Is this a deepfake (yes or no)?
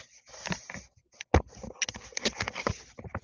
no